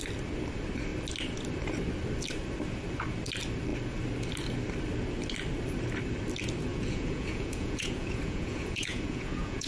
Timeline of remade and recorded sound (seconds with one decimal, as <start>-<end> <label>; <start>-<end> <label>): 0.0-6.7 recorded; 6.7-9.7 remade